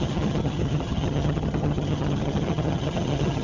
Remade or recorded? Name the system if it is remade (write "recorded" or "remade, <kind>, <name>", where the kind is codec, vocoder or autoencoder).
remade, vocoder, HiFi-GAN